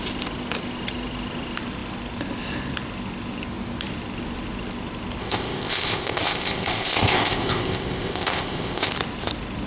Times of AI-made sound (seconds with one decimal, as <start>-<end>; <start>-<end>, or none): 5.2-8.9